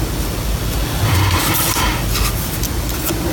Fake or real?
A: real